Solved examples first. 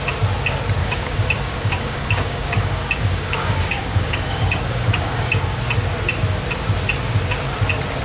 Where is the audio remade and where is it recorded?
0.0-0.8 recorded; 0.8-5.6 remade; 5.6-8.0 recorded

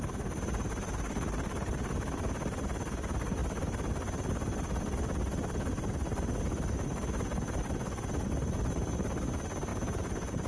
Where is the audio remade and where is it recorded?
0.0-9.7 recorded; 9.7-10.5 remade

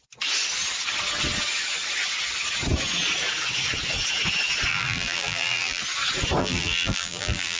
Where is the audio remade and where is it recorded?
0.0-4.7 recorded; 4.7-5.8 remade; 5.8-6.4 recorded; 6.4-7.6 remade